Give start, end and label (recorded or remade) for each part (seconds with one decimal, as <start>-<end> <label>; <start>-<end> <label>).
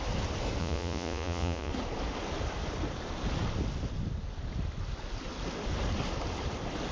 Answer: 0.0-0.6 recorded; 0.6-1.7 remade; 1.7-6.9 recorded